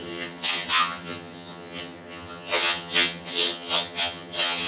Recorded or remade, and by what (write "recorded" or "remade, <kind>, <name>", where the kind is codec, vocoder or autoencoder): remade, vocoder, HiFi-GAN